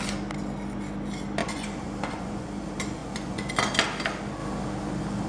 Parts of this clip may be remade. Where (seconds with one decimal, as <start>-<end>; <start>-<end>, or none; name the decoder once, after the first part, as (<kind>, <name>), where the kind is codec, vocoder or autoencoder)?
1.4-2.5 (vocoder, Vocos); 3.0-3.5